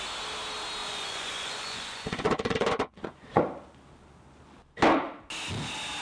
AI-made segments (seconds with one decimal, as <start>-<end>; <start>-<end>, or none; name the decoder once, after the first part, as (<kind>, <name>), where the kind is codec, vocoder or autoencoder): 0.8-3.4 (vocoder, Vocos)